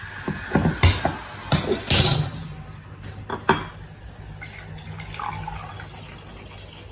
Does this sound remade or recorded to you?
recorded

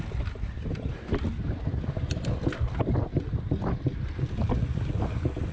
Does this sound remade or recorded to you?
recorded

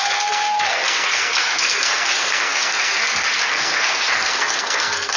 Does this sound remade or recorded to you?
remade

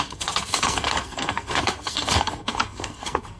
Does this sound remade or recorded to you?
remade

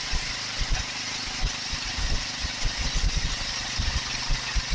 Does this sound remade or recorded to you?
recorded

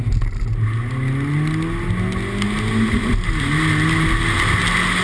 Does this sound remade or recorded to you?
recorded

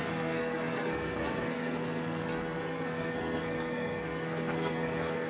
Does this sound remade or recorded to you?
remade